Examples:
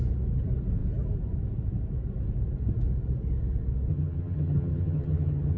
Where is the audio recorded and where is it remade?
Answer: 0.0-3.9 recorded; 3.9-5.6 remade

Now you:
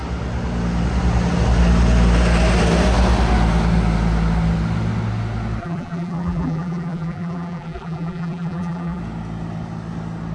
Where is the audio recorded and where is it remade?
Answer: 0.0-5.6 recorded; 5.6-9.0 remade; 9.0-10.3 recorded

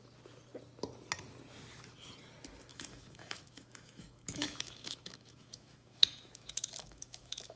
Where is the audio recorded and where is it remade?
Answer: 0.0-2.7 recorded; 2.7-7.6 remade